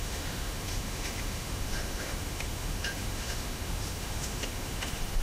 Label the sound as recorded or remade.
remade